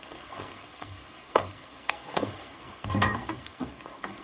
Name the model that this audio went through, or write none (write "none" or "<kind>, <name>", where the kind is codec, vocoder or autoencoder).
codec, SNAC